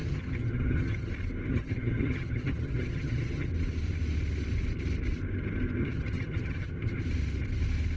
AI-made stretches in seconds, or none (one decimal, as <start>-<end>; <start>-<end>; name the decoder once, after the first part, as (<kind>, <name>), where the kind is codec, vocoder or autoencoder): 0.0-1.1 (vocoder, HiFi-GAN); 1.5-3.5; 5.8-7.0